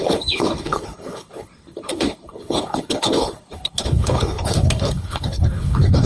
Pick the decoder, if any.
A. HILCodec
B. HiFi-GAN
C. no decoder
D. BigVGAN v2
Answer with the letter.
A